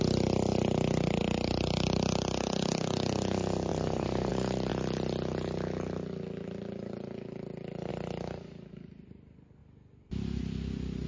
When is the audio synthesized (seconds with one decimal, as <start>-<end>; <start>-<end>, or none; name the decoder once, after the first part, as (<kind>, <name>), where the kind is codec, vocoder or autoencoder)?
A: 3.7-4.3 (vocoder, BigVGAN v2)